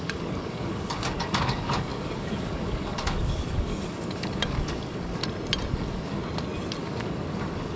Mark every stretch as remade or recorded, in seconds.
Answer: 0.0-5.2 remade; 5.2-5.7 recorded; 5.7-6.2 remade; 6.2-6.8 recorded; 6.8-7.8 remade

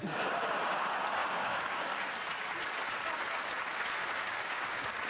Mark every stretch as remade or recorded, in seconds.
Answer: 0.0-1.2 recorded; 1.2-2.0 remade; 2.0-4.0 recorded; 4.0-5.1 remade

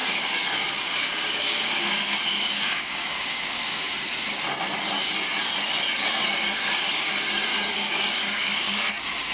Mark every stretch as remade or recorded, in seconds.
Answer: 0.0-4.0 remade; 4.0-6.3 recorded; 6.3-7.0 remade; 7.0-7.5 recorded; 7.5-8.9 remade; 8.9-9.3 recorded

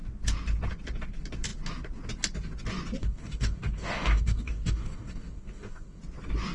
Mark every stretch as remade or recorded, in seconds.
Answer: 0.0-3.0 recorded; 3.0-6.0 remade; 6.0-6.5 recorded

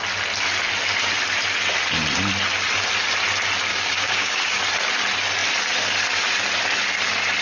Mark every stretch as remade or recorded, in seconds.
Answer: 0.0-3.7 recorded; 3.7-4.6 remade; 4.6-7.4 recorded